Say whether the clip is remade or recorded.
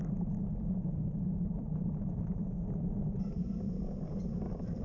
remade